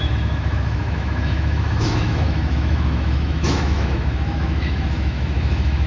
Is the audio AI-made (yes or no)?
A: yes